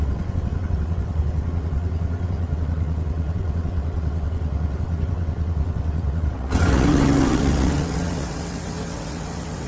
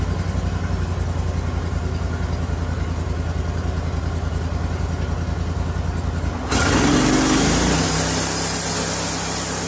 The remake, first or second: first